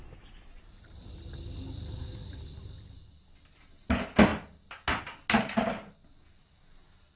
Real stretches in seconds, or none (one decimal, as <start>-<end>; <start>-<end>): 0.0-7.2